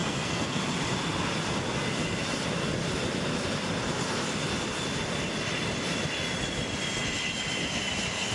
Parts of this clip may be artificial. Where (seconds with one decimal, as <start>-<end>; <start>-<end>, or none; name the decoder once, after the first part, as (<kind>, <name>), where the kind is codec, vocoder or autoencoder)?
0.0-0.6 (codec, SNAC)